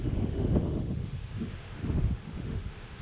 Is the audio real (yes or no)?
no